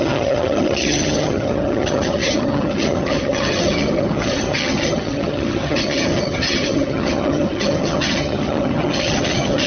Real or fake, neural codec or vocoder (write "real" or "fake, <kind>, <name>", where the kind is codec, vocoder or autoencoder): fake, vocoder, HiFi-GAN